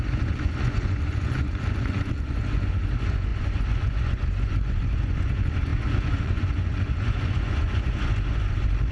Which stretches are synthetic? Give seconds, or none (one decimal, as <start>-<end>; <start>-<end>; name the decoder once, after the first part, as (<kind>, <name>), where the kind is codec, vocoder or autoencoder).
0.0-8.9 (vocoder, Vocos)